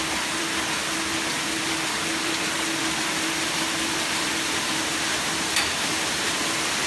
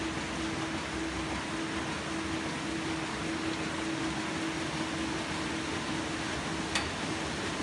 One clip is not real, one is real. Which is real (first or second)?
second